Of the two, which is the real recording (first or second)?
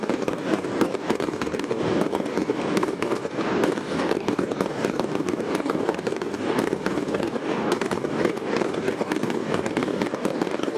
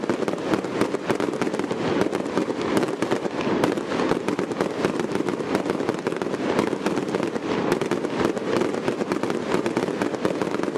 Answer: second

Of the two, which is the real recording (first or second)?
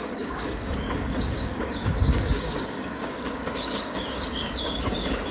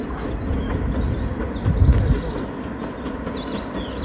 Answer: second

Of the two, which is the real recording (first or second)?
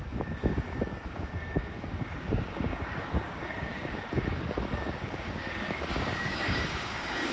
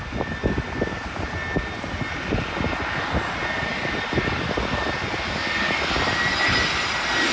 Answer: second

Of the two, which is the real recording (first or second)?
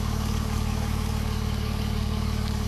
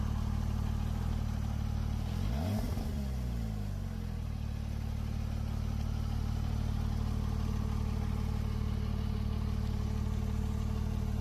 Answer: second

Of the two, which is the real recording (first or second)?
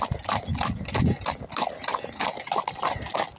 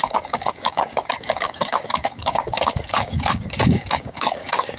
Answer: first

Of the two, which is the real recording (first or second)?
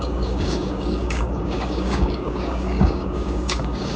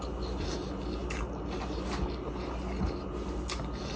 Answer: second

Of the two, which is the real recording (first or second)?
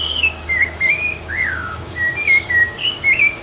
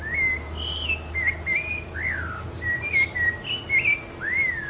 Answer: second